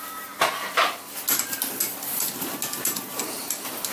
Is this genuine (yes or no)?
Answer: yes